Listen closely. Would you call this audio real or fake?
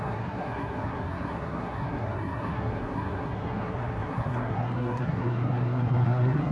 fake